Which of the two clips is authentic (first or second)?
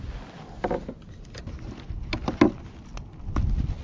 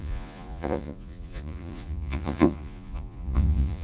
first